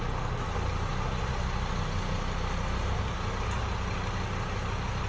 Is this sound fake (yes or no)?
no